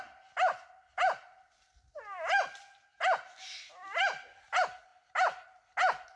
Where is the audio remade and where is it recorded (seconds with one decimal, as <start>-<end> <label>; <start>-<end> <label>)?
0.0-6.2 recorded